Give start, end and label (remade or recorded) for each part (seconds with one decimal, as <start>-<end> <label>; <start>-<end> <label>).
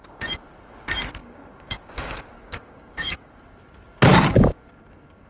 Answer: 0.0-1.2 recorded; 1.2-3.4 remade; 3.4-4.1 recorded; 4.1-4.6 remade; 4.6-5.3 recorded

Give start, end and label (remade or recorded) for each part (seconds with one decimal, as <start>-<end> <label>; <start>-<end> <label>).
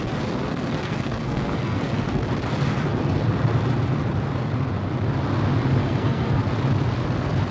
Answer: 0.0-0.5 recorded; 0.5-2.2 remade; 2.2-5.8 recorded; 5.8-6.4 remade; 6.4-7.5 recorded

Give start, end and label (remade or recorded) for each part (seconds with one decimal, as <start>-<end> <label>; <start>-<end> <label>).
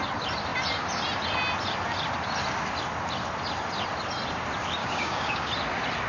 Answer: 0.0-4.8 recorded; 4.8-5.5 remade; 5.5-6.1 recorded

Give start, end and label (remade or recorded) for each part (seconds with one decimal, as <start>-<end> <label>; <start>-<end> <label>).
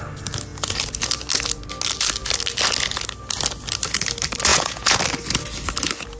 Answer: 0.0-4.5 recorded; 4.5-5.0 remade; 5.0-6.2 recorded